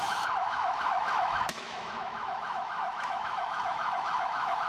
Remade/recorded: remade